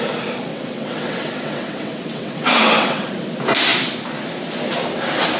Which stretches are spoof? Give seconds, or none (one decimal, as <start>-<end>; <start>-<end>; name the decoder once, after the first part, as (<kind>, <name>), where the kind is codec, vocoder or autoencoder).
0.5-3.1 (vocoder, WaveNeXt)